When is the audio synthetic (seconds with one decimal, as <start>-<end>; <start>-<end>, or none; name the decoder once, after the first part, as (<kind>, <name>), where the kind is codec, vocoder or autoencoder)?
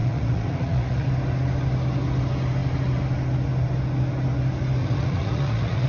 0.0-1.1 (vocoder, Vocos); 4.8-5.9